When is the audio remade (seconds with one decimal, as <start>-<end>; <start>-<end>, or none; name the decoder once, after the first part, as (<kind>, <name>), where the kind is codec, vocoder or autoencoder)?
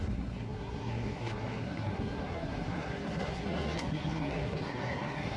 0.0-5.4 (codec, SNAC)